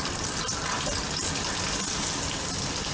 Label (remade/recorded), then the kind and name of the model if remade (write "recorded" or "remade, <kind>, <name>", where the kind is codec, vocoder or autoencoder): recorded